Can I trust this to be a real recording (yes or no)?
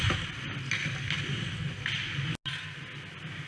yes